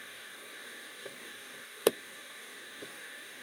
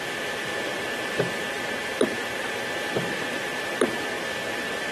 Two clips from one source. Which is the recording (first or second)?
second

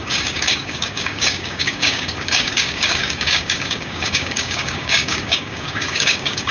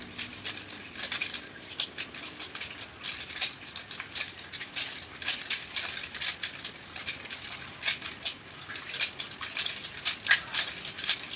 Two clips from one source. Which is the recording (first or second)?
second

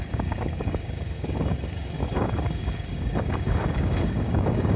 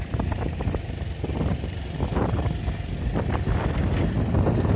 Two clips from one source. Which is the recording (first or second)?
second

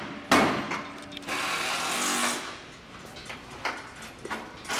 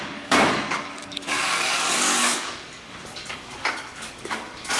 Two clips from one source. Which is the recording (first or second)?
first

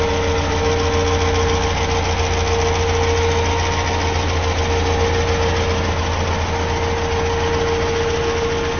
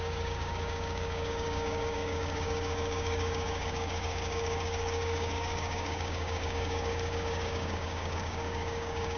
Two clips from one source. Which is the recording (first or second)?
first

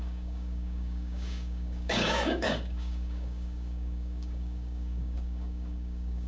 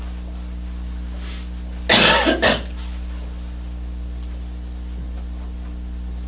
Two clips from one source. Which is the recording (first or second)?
second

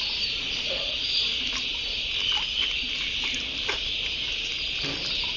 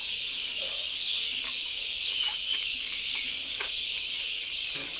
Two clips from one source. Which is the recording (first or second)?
first